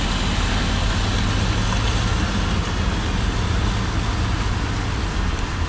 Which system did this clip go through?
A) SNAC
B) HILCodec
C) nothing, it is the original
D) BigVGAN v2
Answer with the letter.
C